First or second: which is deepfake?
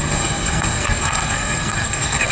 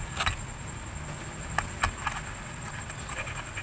first